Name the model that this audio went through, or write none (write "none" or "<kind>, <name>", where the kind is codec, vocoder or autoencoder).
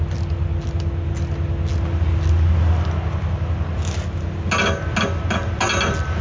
none